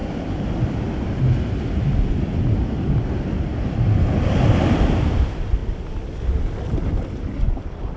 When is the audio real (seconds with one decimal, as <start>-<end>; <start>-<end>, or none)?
0.0-4.3